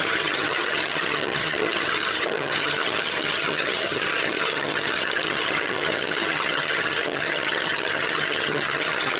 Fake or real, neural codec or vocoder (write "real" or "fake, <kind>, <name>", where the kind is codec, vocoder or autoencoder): fake, vocoder, HiFi-GAN